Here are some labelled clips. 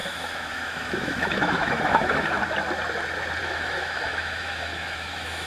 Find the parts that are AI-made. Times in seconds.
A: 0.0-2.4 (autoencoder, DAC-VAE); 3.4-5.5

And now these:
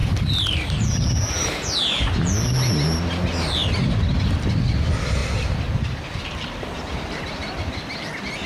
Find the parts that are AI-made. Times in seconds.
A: none

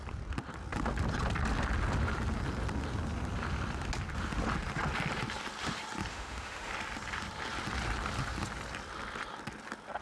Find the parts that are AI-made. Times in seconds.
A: 6.1-6.7 (autoencoder, DAC-VAE)

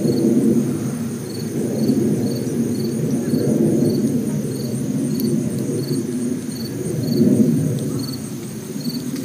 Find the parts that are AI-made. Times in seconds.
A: none

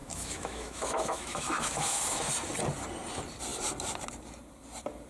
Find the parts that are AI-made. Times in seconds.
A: 0.0-2.2 (autoencoder, DAC-VAE)

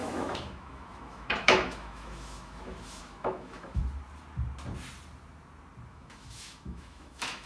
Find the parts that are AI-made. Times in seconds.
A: 0.0-3.8 (autoencoder, DAC-VAE); 5.9-7.5